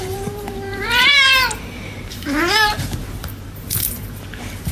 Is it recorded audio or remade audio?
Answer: remade